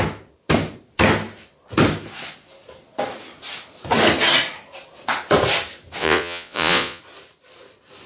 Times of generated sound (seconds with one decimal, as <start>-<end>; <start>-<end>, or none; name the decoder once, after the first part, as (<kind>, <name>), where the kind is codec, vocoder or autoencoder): 6.0-7.0 (vocoder, Vocos)